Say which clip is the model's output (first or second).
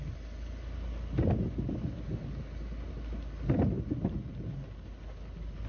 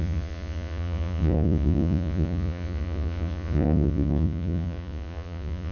second